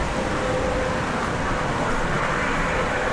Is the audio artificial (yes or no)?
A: yes